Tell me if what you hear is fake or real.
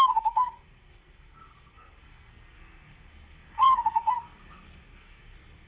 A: fake